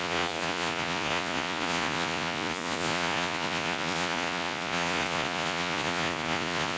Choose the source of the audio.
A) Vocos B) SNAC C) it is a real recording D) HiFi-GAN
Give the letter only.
A